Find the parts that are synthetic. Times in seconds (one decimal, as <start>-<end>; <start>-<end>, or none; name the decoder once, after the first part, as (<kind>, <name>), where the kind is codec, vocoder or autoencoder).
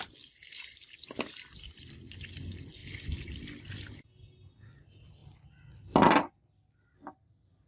none